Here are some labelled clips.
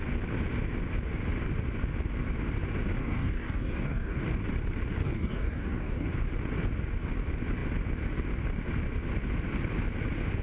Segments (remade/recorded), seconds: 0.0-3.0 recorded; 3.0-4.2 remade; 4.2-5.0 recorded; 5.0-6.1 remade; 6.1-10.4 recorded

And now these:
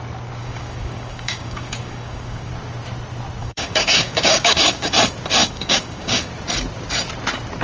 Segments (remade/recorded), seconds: 0.0-0.4 recorded; 0.4-2.5 remade; 2.5-3.4 recorded; 3.4-4.9 remade; 4.9-5.4 recorded; 5.4-6.3 remade; 6.3-7.6 recorded

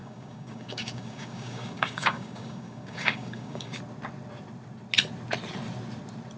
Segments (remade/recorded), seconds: 0.0-3.8 remade; 3.8-6.4 recorded

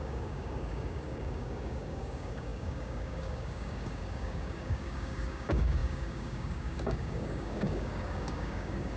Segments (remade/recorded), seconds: 0.0-9.0 remade

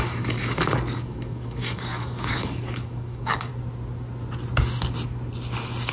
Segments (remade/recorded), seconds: 0.0-3.5 remade; 3.5-5.9 recorded